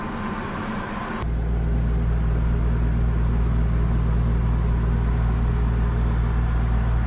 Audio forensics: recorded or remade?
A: recorded